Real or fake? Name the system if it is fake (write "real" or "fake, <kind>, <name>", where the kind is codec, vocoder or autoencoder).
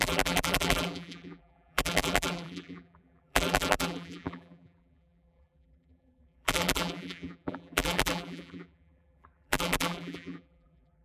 fake, vocoder, BigVGAN v2